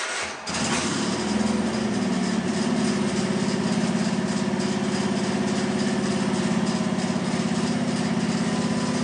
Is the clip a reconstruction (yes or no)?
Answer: no